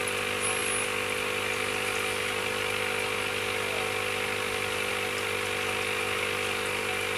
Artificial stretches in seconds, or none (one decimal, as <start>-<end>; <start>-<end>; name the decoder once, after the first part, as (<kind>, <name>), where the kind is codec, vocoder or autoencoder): none